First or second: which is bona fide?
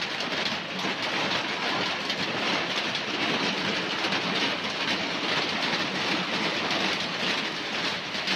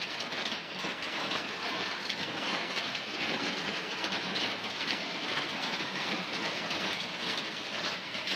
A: first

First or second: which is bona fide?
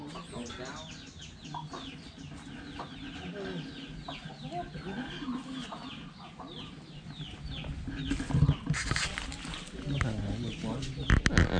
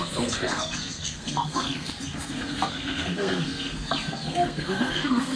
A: first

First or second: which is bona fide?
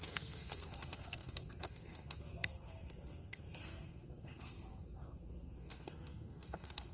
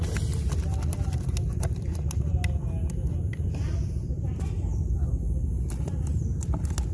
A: second